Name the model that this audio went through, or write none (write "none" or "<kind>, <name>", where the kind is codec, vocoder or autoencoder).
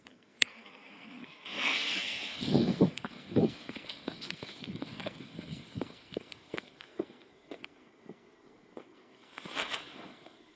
codec, SNAC